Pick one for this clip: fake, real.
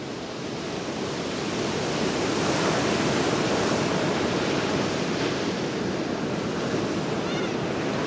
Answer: real